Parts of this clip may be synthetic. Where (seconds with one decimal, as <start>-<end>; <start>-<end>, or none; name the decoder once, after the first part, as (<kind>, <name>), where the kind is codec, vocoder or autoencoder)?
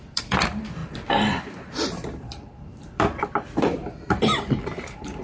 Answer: 0.0-5.2 (vocoder, BigVGAN v2)